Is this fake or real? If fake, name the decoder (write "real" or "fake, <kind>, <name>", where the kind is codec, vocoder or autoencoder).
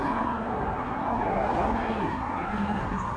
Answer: fake, codec, SNAC